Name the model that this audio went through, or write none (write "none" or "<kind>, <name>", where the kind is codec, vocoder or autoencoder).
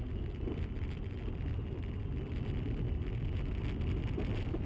none